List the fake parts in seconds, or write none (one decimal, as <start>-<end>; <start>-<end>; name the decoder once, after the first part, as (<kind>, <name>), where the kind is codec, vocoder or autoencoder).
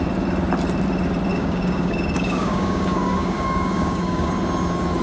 1.3-4.3 (codec, DAC)